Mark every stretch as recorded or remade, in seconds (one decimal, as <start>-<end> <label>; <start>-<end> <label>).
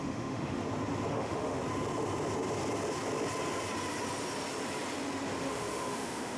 0.0-0.6 remade; 0.6-1.1 recorded; 1.1-1.6 remade; 1.6-5.4 recorded; 5.4-6.4 remade